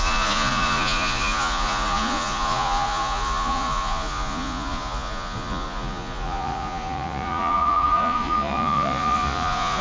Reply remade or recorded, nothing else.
remade